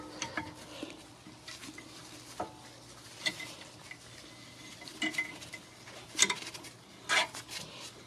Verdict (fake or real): real